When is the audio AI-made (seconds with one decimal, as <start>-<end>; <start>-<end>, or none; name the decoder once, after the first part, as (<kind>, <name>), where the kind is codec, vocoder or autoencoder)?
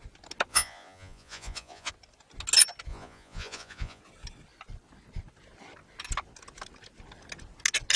0.5-1.9 (vocoder, Vocos); 2.9-4.0